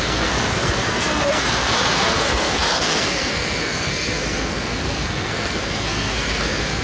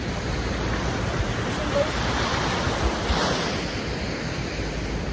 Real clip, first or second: second